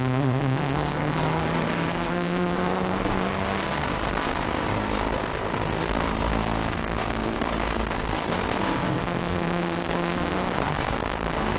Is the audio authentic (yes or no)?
no